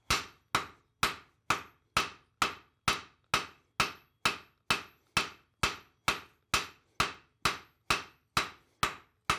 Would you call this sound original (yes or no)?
yes